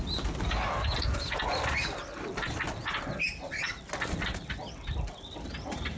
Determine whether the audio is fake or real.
real